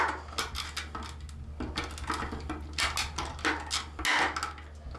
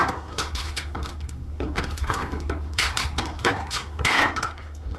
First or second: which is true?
first